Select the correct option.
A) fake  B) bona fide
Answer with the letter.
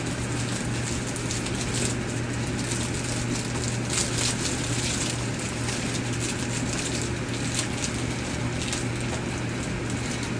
B